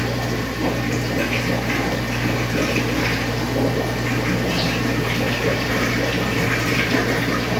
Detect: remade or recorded recorded